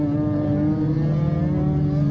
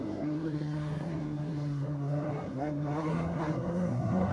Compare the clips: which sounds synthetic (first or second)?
second